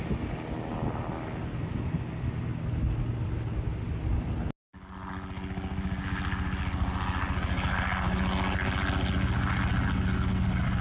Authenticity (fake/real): real